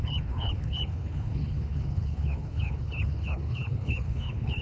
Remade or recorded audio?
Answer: remade